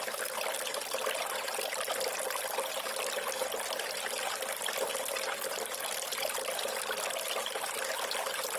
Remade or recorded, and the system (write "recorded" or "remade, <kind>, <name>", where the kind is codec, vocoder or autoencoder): recorded